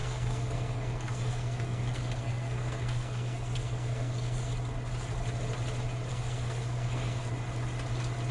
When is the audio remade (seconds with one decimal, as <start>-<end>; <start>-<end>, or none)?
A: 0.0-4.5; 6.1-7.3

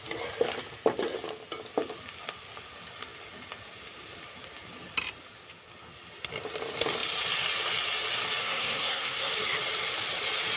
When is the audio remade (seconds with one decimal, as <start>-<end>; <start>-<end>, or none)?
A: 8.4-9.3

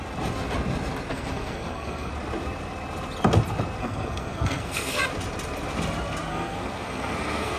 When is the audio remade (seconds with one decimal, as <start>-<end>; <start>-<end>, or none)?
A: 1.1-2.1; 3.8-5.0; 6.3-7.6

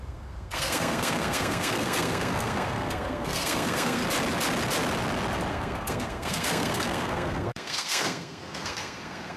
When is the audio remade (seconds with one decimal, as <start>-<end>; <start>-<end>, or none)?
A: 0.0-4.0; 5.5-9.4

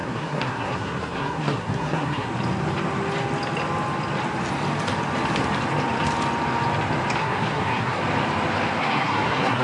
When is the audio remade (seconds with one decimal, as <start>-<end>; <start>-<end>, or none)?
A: 0.0-2.3; 7.2-8.0; 8.8-9.6

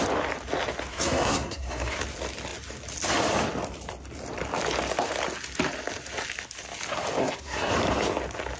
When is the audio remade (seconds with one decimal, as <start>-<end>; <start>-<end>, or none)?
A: 0.9-2.0; 7.2-7.7